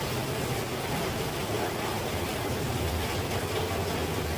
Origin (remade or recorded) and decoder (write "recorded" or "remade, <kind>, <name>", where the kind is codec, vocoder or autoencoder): remade, vocoder, BigVGAN v2